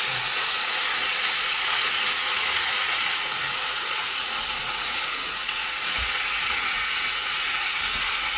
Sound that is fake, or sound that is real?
fake